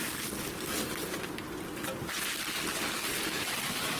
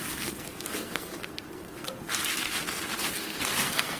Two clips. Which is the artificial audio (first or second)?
second